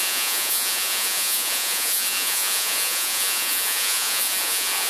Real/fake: fake